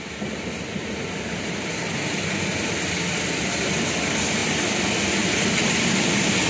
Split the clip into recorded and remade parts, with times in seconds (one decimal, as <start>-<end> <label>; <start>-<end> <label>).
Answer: 0.0-6.5 recorded

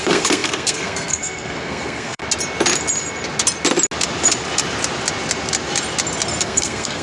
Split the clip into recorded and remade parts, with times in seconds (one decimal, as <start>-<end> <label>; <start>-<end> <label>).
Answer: 0.0-2.2 remade; 2.2-6.4 recorded; 6.4-7.0 remade

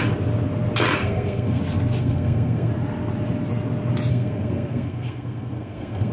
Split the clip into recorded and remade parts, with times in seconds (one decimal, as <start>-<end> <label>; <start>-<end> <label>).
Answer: 0.0-1.0 recorded; 1.0-1.6 remade; 1.6-2.0 recorded; 2.0-2.7 remade; 2.7-4.1 recorded; 4.1-6.1 remade

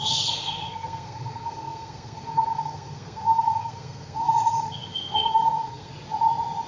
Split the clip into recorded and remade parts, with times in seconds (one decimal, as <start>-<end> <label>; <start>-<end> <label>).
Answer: 0.0-5.9 remade; 5.9-6.7 recorded

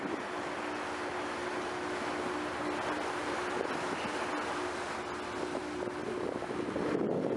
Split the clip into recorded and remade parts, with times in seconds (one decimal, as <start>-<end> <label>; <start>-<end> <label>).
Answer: 0.0-7.4 recorded

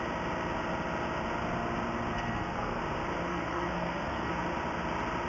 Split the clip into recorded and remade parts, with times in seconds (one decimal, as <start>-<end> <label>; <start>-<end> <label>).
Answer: 0.0-2.1 recorded; 2.1-2.8 remade; 2.8-3.3 recorded; 3.3-4.3 remade; 4.3-5.3 recorded